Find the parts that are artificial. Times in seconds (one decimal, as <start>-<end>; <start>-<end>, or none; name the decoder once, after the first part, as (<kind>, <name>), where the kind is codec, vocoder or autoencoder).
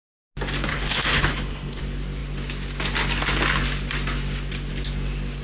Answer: 0.7-1.8 (codec, HILCodec)